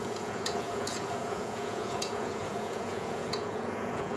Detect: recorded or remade remade